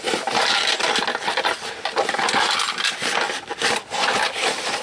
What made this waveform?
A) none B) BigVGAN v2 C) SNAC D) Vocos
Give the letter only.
A